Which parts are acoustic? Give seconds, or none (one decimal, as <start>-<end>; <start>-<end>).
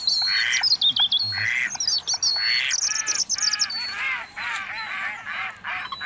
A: 0.0-6.1